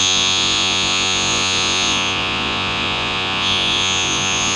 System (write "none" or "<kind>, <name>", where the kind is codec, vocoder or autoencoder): vocoder, Vocos